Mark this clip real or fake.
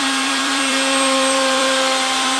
fake